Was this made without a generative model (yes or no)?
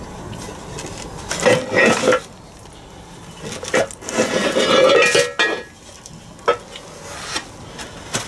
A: yes